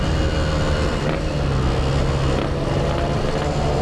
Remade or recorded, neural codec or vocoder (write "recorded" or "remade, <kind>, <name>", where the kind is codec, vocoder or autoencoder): recorded